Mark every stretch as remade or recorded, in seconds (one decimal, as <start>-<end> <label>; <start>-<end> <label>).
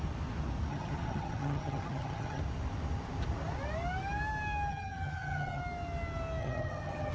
0.0-0.7 recorded; 0.7-2.4 remade; 2.4-4.7 recorded; 4.7-5.6 remade; 5.6-6.4 recorded; 6.4-7.1 remade